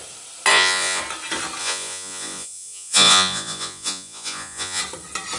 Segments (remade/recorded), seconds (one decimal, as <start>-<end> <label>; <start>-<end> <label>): 0.0-0.5 recorded; 0.5-1.0 remade; 1.0-1.6 recorded; 1.6-4.8 remade; 4.8-5.4 recorded